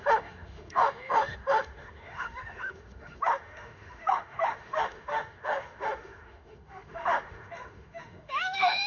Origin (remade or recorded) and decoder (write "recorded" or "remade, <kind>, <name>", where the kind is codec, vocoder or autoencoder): remade, autoencoder, DAC-VAE